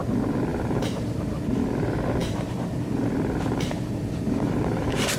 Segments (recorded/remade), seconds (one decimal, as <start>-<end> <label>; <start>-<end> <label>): 0.0-0.5 recorded; 0.5-1.4 remade; 1.4-2.2 recorded; 2.2-5.2 remade